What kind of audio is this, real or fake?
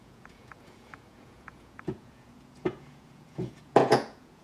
fake